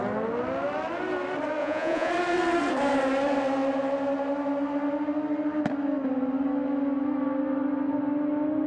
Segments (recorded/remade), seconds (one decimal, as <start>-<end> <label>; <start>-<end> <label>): 0.0-1.6 recorded; 1.6-2.1 remade; 2.1-8.7 recorded